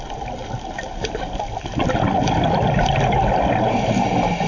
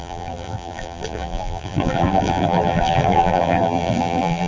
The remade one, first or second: second